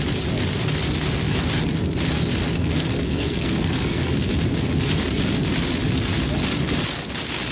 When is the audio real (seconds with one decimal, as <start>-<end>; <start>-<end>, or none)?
0.0-2.6; 4.3-7.5